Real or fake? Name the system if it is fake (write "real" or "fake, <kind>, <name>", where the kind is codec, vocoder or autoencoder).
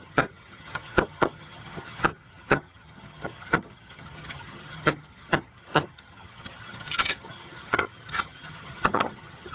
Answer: fake, vocoder, HiFi-GAN